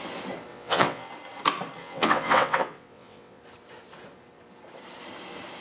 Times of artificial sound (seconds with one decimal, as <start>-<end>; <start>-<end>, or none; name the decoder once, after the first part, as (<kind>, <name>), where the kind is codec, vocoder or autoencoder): 0.5-1.1 (vocoder, WaveNeXt); 1.8-3.4